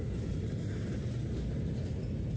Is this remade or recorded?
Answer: recorded